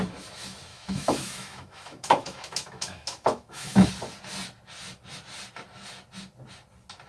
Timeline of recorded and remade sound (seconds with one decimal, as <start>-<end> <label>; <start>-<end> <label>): 0.0-0.7 recorded; 0.7-3.9 remade; 3.9-7.1 recorded